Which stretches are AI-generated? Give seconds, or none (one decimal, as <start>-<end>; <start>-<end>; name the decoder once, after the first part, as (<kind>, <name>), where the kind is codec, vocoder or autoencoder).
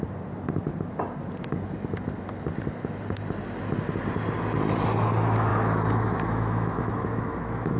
5.5-7.8 (autoencoder, DAC-VAE)